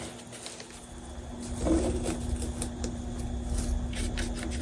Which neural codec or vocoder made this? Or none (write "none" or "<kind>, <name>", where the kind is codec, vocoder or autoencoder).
none